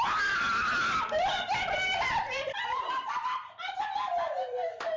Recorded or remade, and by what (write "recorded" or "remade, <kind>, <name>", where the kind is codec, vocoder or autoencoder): remade, vocoder, BigVGAN v2